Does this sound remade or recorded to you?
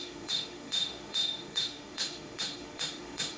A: remade